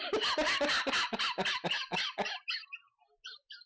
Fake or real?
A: real